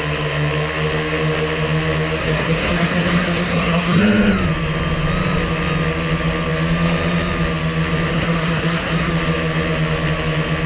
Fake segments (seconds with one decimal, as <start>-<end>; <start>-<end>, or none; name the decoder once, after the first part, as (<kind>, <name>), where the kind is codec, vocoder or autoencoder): 2.2-4.0 (codec, SNAC); 8.1-9.1